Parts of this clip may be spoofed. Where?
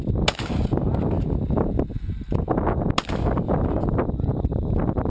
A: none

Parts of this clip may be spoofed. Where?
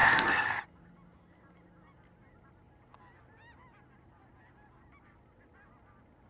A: 0.0-0.6 (codec, SNAC)